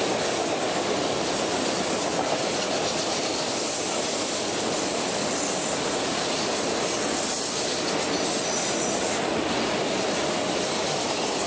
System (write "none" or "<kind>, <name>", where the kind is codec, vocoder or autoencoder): none